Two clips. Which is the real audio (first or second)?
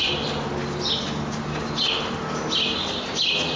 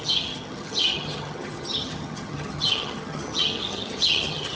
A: first